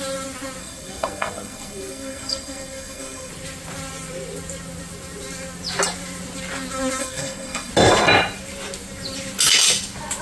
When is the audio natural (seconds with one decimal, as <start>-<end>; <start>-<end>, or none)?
0.0-0.6; 3.3-7.0; 7.7-10.2